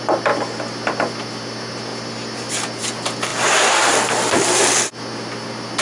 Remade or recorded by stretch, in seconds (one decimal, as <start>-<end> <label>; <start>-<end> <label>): 0.0-5.8 recorded